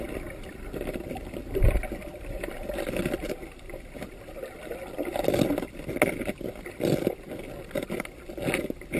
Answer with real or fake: real